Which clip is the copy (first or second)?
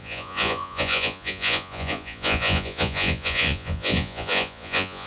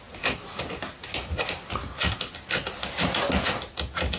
first